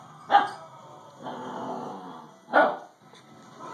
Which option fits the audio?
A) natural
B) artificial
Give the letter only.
A